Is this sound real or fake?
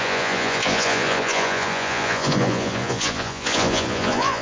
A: fake